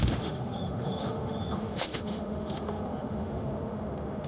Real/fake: fake